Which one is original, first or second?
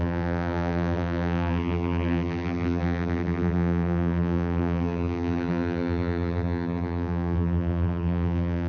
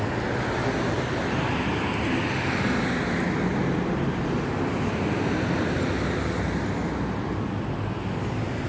second